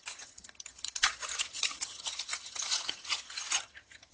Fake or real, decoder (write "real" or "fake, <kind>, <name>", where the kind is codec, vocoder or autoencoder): fake, vocoder, HiFi-GAN